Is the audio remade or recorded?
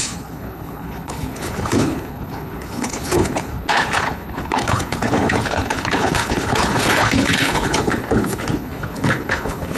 remade